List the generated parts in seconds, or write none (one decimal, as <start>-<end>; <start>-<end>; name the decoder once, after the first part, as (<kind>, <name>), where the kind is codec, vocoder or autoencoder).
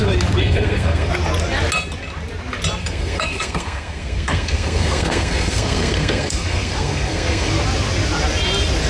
0.4-1.1 (codec, SNAC); 2.8-7.5